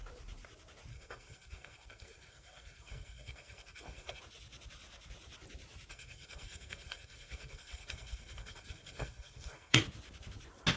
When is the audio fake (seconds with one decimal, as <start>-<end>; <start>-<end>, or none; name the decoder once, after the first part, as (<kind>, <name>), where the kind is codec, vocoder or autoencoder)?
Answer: 0.9-4.2 (codec, SNAC); 5.9-9.8